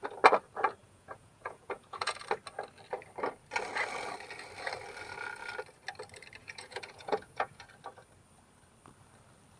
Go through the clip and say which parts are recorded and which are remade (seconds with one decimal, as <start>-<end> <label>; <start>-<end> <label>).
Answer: 0.0-0.8 recorded; 0.8-2.2 remade; 2.2-6.4 recorded; 6.4-7.6 remade; 7.6-9.6 recorded